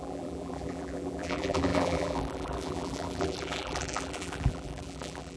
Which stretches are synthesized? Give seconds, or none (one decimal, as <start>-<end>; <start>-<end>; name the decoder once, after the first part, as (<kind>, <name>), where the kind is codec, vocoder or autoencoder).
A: 0.0-5.4 (vocoder, BigVGAN v2)